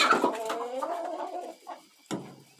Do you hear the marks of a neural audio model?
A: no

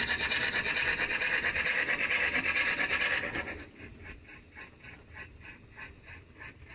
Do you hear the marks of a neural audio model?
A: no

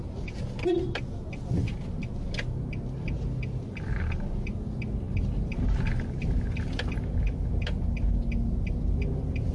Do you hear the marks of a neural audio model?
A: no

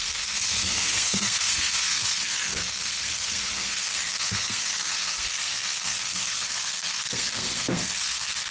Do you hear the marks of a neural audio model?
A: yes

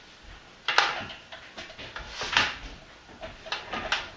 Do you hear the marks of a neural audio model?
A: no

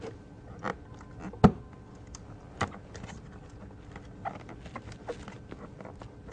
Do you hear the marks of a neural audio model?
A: no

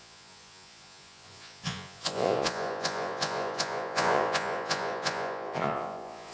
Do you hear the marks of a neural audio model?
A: yes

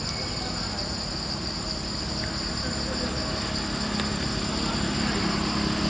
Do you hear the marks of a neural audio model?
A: no